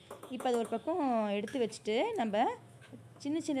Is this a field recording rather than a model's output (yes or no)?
no